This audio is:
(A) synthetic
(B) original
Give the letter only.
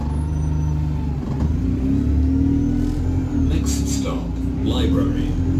B